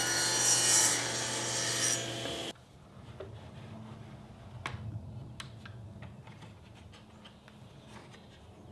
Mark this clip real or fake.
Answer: real